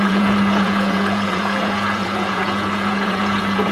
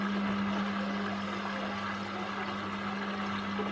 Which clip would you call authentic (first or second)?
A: second